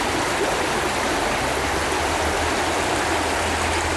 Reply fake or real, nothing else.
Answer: real